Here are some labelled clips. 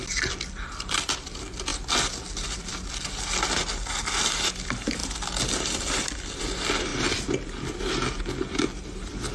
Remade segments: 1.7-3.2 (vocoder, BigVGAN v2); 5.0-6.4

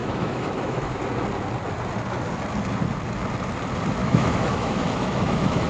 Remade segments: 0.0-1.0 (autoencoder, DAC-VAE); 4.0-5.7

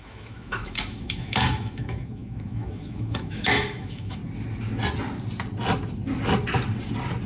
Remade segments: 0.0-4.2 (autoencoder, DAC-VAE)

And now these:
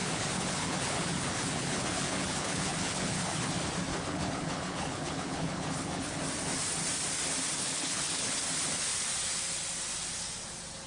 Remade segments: 0.0-3.5 (codec, HILCodec); 3.9-6.2; 7.6-8.4

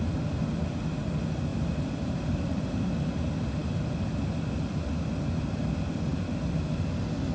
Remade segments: 1.5-2.8 (vocoder, BigVGAN v2); 6.1-6.7

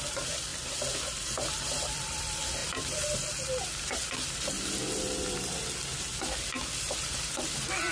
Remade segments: none